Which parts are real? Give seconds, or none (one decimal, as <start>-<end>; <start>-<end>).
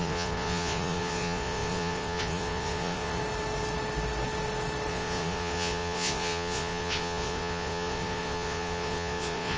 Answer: 3.2-4.9